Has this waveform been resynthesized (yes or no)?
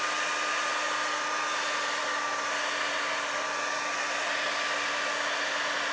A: no